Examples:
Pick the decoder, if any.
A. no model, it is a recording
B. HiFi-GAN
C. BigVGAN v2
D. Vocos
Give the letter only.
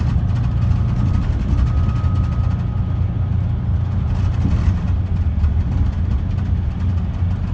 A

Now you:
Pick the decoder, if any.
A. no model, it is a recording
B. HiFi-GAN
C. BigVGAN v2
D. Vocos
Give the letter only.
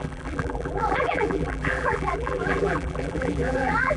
C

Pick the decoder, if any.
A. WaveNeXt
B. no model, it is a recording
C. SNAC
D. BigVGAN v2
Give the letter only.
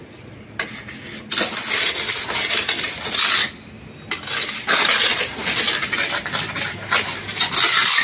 B